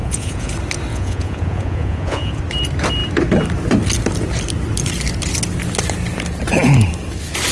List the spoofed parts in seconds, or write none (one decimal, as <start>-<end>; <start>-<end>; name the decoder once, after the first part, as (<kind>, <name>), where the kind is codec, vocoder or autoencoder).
0.0-0.5 (vocoder, Vocos); 0.9-2.4